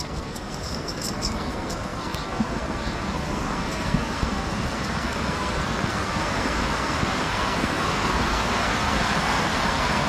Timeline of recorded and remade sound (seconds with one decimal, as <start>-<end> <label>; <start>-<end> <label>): 0.0-10.1 remade